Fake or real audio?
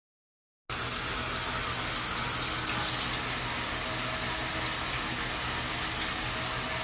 real